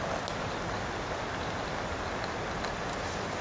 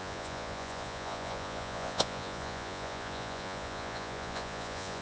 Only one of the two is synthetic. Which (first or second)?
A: second